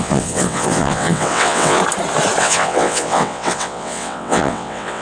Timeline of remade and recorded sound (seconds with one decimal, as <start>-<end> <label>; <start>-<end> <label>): 0.0-1.8 remade; 1.8-2.4 recorded; 2.4-5.0 remade

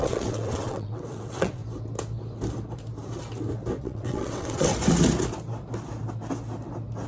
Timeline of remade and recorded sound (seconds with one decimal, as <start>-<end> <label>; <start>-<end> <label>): 0.0-1.6 remade; 1.6-3.8 recorded; 3.8-4.7 remade; 4.7-7.1 recorded